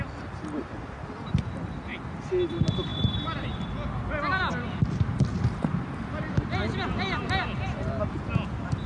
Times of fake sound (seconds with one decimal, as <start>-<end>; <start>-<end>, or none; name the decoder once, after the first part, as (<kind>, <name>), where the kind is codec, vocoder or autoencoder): none